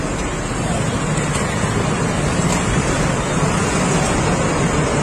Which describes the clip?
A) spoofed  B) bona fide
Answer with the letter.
B